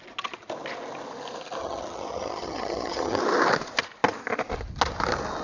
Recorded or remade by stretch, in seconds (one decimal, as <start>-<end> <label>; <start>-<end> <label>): 0.0-1.6 recorded; 1.6-3.2 remade; 3.2-5.4 recorded